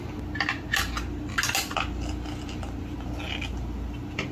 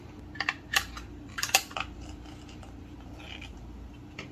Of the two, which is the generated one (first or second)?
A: second